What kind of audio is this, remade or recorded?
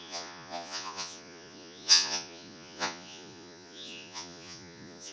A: remade